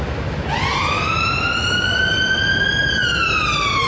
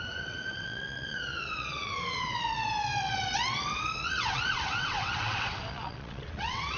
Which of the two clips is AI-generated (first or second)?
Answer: second